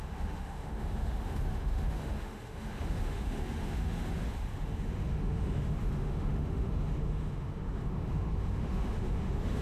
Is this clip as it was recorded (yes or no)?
no